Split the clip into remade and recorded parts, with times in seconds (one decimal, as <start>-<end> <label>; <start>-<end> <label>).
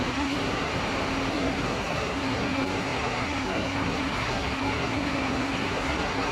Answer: 0.0-0.7 remade; 0.7-1.3 recorded; 1.3-6.3 remade